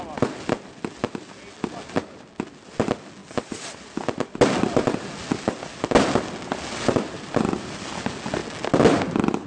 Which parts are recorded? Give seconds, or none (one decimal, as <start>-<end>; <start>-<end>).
0.0-9.5